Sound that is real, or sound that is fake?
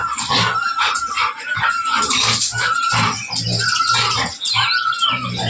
real